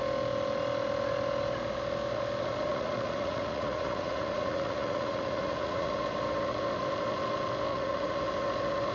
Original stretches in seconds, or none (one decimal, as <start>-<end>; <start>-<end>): 0.0-2.7; 5.9-7.7; 8.2-8.9